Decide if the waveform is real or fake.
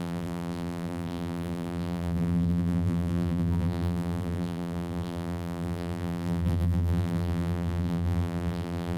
fake